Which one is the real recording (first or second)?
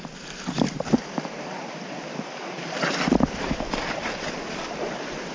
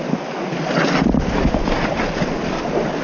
second